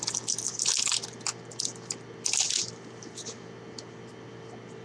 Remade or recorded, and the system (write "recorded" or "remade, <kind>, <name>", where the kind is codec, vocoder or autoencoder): recorded